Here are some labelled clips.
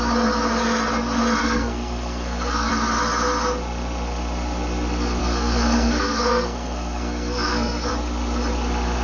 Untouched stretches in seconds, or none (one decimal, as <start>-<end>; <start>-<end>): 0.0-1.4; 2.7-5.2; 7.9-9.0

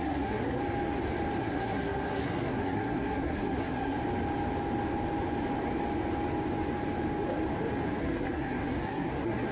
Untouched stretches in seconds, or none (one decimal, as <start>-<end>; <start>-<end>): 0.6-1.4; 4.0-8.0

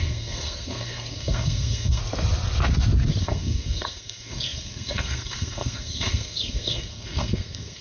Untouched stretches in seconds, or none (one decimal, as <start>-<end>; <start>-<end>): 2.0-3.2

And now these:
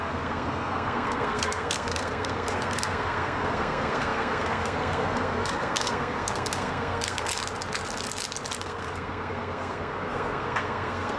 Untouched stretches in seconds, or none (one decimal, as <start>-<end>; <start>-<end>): 7.3-8.6

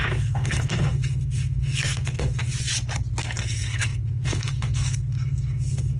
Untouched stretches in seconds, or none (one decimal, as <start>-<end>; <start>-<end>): 2.5-3.2